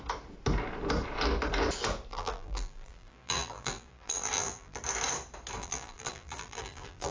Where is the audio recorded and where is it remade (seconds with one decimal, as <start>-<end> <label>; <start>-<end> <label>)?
0.0-2.1 recorded; 2.1-4.8 remade; 4.8-5.6 recorded; 5.6-7.1 remade